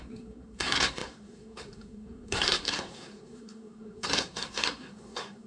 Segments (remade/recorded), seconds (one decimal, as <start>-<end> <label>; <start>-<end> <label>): 0.0-5.5 remade